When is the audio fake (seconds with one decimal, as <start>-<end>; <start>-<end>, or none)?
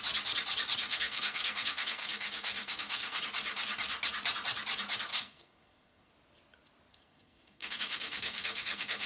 0.8-3.2; 5.1-6.1; 6.9-9.1